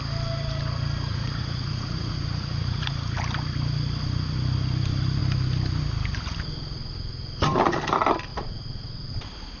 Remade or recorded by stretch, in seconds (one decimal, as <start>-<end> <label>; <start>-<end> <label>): 0.0-1.1 recorded; 1.1-3.2 remade; 3.2-8.3 recorded; 8.3-9.1 remade; 9.1-9.6 recorded